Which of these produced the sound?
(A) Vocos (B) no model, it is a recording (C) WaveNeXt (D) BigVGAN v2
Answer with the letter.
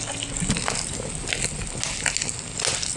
B